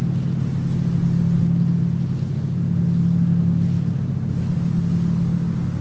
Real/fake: real